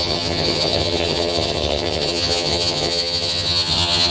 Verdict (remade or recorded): remade